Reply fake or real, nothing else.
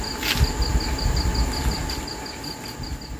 real